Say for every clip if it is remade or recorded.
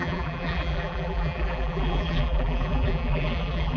remade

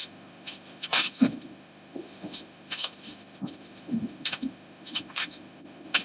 remade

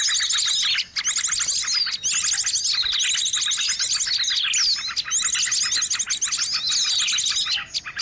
recorded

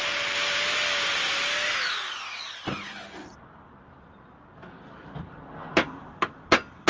recorded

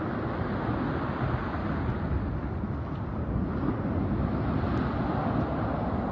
recorded